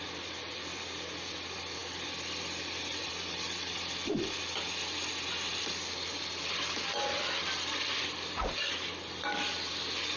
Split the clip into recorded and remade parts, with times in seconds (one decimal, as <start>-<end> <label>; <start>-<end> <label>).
0.0-10.2 recorded